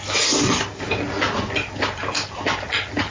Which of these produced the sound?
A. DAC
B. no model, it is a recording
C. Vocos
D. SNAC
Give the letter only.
B